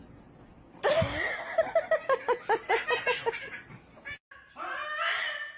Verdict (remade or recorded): recorded